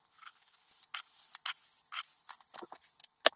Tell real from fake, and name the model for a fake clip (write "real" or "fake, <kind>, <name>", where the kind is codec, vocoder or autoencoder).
real